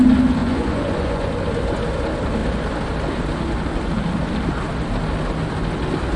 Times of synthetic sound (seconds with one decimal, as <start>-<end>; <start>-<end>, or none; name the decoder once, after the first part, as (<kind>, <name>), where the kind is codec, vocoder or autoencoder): 0.4-1.3 (vocoder, Vocos)